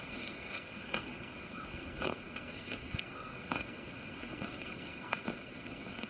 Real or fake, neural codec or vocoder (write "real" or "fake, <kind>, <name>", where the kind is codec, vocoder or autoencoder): fake, codec, SNAC